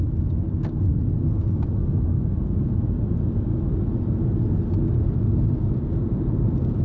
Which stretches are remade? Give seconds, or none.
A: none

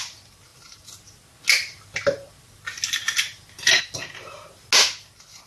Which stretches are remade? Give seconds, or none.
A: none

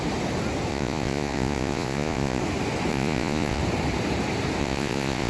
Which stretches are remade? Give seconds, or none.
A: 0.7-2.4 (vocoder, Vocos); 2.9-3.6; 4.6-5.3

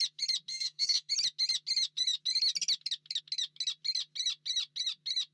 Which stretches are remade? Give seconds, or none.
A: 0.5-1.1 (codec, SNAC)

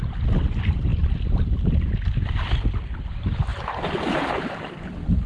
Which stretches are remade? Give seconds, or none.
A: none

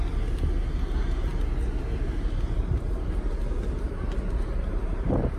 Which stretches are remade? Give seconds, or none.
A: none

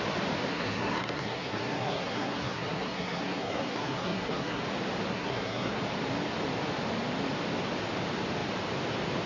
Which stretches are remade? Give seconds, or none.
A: 0.5-4.6 (codec, SNAC); 5.1-5.8